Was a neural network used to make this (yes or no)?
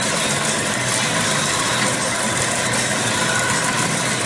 no